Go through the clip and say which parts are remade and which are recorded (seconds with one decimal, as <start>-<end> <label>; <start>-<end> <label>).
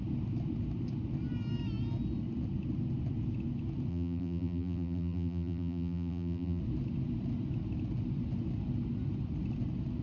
0.0-3.9 recorded; 3.9-6.6 remade; 6.6-10.0 recorded